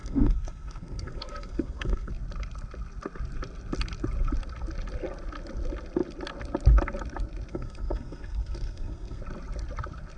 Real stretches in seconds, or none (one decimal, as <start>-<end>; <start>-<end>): 2.1-7.5; 9.2-10.2